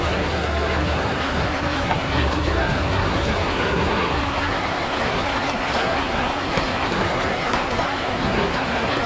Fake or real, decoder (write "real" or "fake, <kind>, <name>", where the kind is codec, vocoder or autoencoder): fake, codec, SNAC